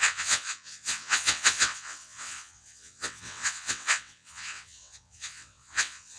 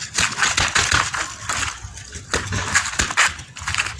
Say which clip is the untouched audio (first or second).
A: second